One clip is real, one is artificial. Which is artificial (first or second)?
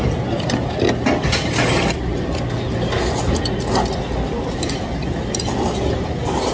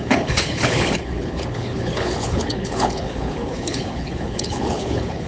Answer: second